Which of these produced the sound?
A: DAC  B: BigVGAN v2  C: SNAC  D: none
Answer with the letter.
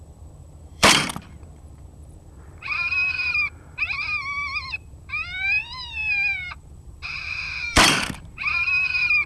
B